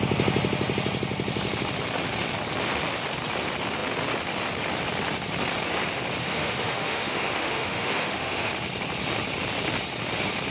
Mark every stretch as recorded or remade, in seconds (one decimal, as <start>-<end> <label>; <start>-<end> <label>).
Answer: 0.0-6.2 recorded; 6.2-8.5 remade; 8.5-10.5 recorded